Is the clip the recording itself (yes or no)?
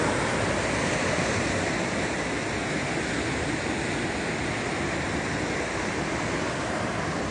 yes